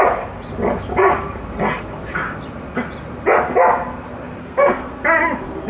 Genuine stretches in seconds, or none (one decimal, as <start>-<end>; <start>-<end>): 0.0-4.4; 4.9-5.7